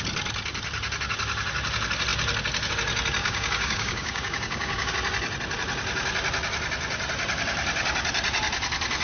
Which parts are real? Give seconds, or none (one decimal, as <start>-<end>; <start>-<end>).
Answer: 0.0-3.2; 4.9-9.0